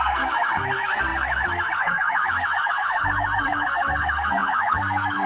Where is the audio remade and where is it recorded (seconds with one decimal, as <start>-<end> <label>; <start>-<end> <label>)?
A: 0.0-5.3 remade